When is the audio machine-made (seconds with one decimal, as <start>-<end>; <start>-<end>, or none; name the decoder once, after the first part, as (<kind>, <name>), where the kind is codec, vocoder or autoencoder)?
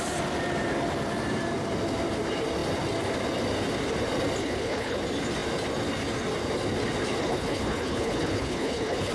4.4-5.0 (codec, HILCodec); 7.2-9.1